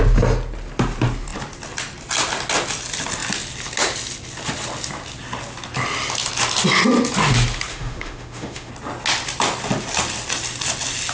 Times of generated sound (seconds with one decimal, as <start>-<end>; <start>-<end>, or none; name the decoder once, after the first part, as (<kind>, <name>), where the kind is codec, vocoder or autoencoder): 7.7-8.7 (autoencoder, DAC-VAE)